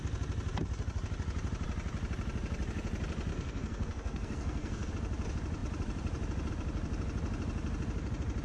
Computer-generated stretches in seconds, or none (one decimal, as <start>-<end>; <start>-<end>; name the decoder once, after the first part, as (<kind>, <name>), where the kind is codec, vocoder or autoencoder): 3.3-4.9 (codec, SNAC)